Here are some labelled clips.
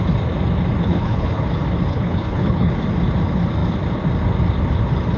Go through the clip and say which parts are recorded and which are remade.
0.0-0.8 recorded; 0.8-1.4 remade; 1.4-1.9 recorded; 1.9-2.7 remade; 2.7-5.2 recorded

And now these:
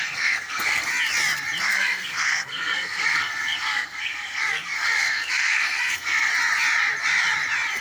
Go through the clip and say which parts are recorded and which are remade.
0.0-0.9 remade; 0.9-1.6 recorded; 1.6-6.3 remade; 6.3-7.8 recorded

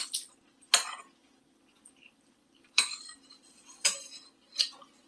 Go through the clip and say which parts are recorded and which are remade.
0.0-1.2 recorded; 1.2-4.3 remade; 4.3-5.1 recorded

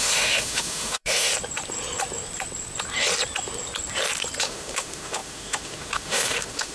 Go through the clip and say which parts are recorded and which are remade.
0.0-1.3 remade; 1.3-4.4 recorded; 4.4-6.7 remade

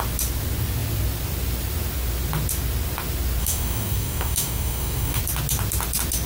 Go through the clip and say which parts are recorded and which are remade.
0.0-3.4 recorded; 3.4-5.2 remade; 5.2-6.3 recorded

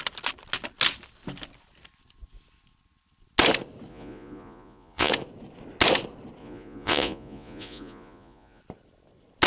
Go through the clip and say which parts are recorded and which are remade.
0.0-3.9 recorded; 3.9-5.1 remade; 5.1-6.4 recorded; 6.4-8.6 remade; 8.6-9.5 recorded

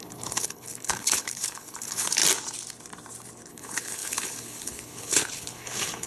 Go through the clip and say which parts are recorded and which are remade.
0.0-2.2 remade; 2.2-3.5 recorded; 3.5-6.1 remade

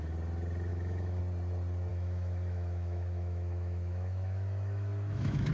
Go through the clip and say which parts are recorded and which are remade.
0.0-0.7 recorded; 0.7-1.2 remade; 1.2-1.9 recorded; 1.9-5.5 remade